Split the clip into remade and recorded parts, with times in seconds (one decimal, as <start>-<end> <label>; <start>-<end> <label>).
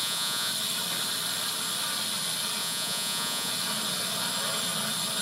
0.0-0.5 remade; 0.5-2.6 recorded; 2.6-3.5 remade; 3.5-5.2 recorded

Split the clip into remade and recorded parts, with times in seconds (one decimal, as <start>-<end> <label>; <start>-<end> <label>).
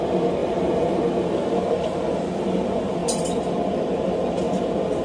0.0-0.4 recorded; 0.4-1.0 remade; 1.0-5.0 recorded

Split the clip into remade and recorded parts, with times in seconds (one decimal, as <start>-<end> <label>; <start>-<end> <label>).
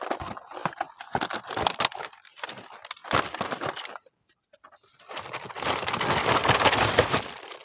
0.0-6.4 recorded; 6.4-7.1 remade; 7.1-7.6 recorded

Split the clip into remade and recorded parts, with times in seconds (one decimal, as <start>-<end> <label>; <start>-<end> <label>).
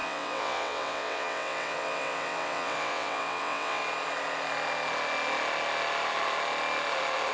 0.0-3.8 remade; 3.8-7.3 recorded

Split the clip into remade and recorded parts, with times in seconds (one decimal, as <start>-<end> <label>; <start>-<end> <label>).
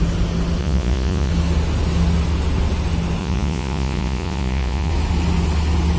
0.0-0.6 recorded; 0.6-1.3 remade; 1.3-3.2 recorded; 3.2-4.9 remade; 4.9-6.0 recorded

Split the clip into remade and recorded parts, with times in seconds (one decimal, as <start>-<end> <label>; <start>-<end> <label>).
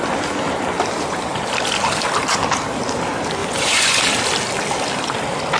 0.0-3.4 recorded; 3.4-4.0 remade; 4.0-5.6 recorded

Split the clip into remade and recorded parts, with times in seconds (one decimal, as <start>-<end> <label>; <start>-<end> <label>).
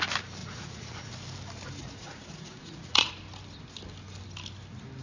0.0-0.4 recorded; 0.4-1.1 remade; 1.1-1.8 recorded; 1.8-3.1 remade; 3.1-5.0 recorded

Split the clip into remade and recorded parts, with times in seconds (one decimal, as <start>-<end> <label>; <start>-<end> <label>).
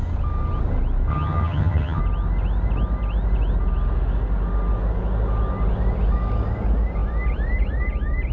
0.0-1.1 recorded; 1.1-2.0 remade; 2.0-8.3 recorded